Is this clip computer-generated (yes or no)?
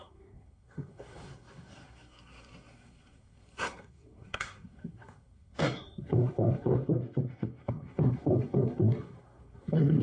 yes